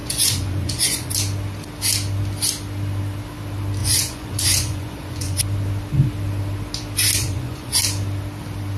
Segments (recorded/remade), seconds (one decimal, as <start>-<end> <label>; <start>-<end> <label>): 0.0-1.1 remade; 1.1-3.8 recorded; 3.8-5.4 remade; 5.4-7.2 recorded; 7.2-7.8 remade; 7.8-8.8 recorded